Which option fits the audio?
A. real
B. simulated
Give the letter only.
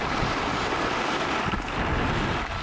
A